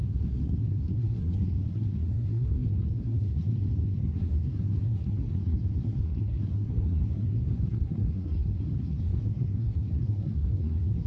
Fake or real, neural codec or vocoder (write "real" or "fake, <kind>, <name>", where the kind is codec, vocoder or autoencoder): fake, codec, SNAC